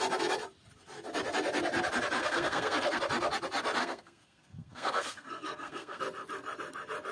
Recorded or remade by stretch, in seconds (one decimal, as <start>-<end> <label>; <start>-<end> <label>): 0.0-2.2 recorded; 2.2-3.0 remade; 3.0-3.8 recorded; 3.8-6.0 remade; 6.0-7.1 recorded